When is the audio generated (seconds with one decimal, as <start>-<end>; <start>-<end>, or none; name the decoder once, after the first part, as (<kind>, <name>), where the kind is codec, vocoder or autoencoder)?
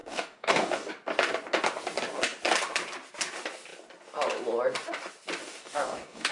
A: 0.0-0.9 (codec, DAC); 5.4-6.3